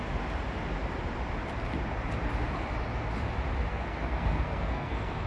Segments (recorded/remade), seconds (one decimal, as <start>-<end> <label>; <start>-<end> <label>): 0.0-3.7 recorded; 3.7-5.3 remade